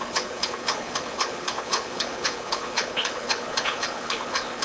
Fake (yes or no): yes